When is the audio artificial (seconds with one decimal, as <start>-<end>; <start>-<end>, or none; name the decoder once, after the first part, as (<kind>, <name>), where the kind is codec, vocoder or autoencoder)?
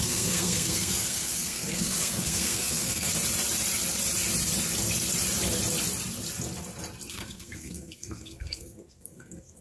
0.0-3.1 (codec, SNAC); 7.1-9.6